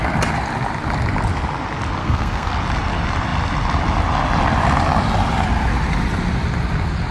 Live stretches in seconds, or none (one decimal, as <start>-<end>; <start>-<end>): 0.0-2.0; 2.5-7.1